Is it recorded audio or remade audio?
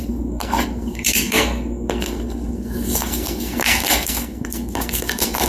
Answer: remade